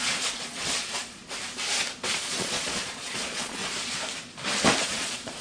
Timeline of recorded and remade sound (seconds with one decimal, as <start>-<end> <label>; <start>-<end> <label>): 0.0-1.2 remade; 1.2-2.1 recorded; 2.1-3.6 remade; 3.6-4.8 recorded; 4.8-5.4 remade